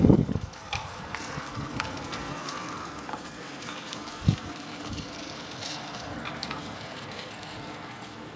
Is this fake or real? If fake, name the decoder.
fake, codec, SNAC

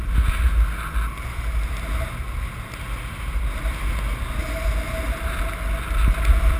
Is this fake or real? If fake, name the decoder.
real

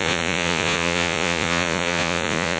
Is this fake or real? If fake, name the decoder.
fake, vocoder, Vocos